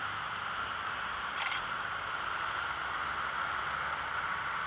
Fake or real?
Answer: real